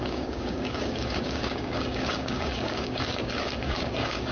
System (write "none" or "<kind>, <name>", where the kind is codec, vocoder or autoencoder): codec, DAC